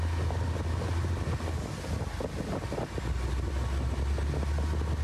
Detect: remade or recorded recorded